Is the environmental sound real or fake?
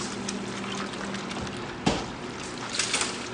real